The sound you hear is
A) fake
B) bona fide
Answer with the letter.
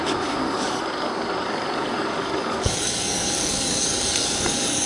A